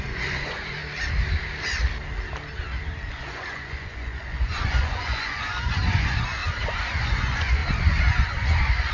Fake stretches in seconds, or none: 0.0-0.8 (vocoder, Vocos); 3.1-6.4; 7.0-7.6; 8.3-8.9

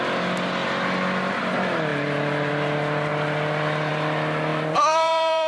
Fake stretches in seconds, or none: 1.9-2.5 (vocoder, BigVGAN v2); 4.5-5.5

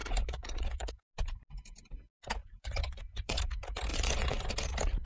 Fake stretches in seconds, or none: 0.0-0.9 (vocoder, Vocos); 2.4-3.4; 3.9-4.5